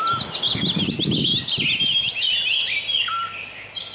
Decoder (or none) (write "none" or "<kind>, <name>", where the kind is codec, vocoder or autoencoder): none